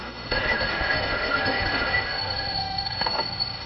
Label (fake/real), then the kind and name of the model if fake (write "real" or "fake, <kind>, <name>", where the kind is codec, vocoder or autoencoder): fake, autoencoder, DAC-VAE